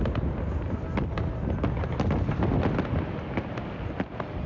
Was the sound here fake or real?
real